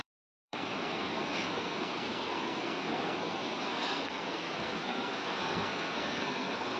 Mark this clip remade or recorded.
remade